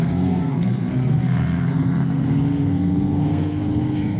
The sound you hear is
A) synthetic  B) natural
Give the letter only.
A